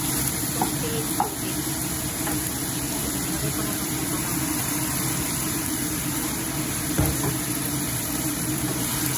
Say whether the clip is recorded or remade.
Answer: remade